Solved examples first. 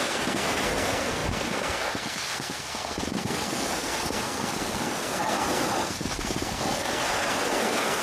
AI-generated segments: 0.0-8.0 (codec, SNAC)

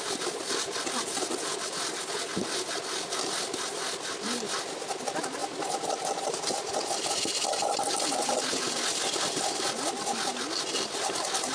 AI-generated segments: none

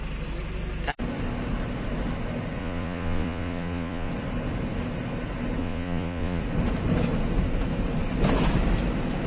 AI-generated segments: 2.6-4.1 (vocoder, Vocos); 5.6-6.4